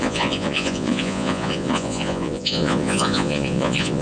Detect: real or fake fake